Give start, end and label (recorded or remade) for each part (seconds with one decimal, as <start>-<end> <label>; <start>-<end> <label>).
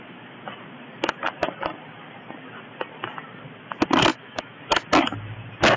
0.0-4.1 recorded; 4.1-4.6 remade; 4.6-5.8 recorded